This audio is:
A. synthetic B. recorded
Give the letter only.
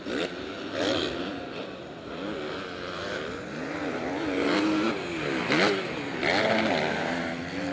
B